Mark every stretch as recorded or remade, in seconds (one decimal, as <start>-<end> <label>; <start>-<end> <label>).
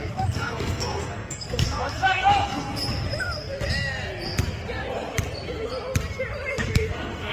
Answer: 0.0-2.7 remade; 2.7-6.5 recorded; 6.5-7.3 remade